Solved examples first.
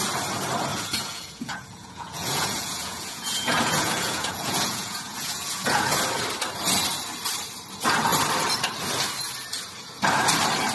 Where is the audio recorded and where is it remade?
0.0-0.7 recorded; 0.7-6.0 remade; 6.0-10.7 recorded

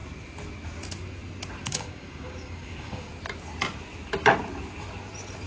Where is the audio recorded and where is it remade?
0.0-1.6 recorded; 1.6-3.1 remade; 3.1-5.5 recorded